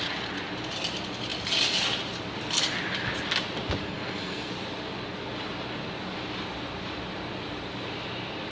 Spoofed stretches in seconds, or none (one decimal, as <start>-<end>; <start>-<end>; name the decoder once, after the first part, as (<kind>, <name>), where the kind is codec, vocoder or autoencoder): 3.8-4.5 (codec, SNAC)